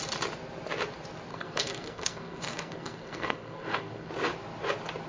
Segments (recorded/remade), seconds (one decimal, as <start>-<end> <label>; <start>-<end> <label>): 0.0-1.3 recorded; 1.3-4.1 remade; 4.1-5.1 recorded